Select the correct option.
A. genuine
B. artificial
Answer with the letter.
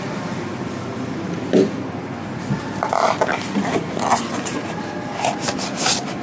B